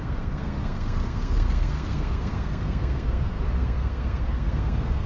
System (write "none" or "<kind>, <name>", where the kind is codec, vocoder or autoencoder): codec, SNAC